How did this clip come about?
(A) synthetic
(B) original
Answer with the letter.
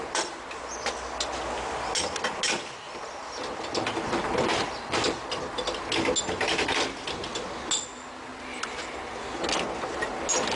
B